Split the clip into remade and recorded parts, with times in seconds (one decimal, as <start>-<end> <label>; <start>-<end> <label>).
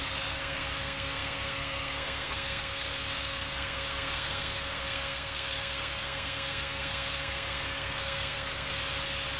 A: 0.0-8.8 remade; 8.8-9.4 recorded